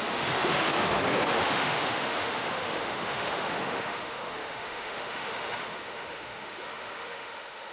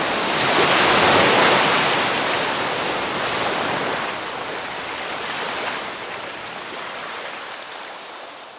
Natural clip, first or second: second